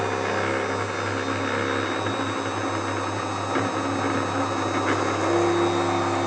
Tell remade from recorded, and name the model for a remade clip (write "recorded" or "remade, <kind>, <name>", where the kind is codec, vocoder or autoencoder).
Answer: recorded